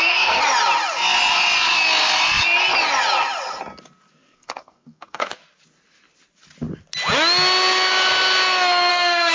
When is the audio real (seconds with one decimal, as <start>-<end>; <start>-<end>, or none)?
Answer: 0.4-4.1; 5.4-8.9